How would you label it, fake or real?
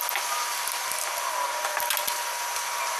real